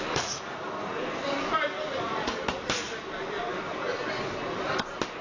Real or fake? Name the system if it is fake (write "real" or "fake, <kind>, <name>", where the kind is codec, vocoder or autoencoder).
real